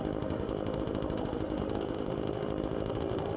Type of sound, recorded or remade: remade